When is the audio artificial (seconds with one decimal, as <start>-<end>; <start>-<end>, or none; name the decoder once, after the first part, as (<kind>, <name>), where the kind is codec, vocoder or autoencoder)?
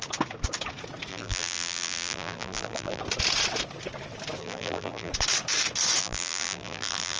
1.1-3.0 (vocoder, BigVGAN v2); 4.4-5.1; 6.0-7.2